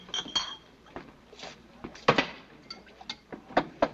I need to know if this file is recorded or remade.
recorded